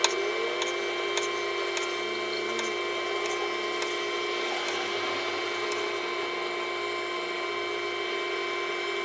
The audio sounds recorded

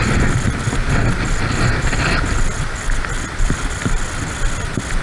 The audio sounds recorded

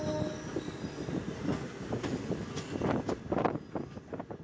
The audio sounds recorded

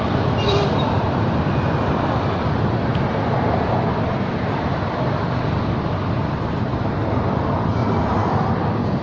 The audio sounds recorded